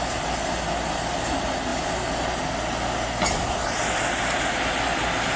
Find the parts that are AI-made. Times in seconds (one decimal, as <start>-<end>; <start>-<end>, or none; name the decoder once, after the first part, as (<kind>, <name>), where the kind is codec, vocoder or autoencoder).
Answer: none